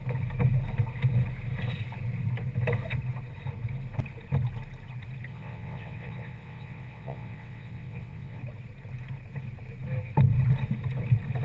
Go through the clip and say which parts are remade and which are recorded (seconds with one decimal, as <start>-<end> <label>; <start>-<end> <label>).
0.0-5.3 recorded; 5.3-8.4 remade; 8.4-11.4 recorded